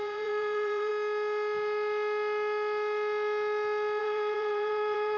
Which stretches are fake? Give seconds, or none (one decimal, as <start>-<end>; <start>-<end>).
0.0-0.9; 4.0-5.2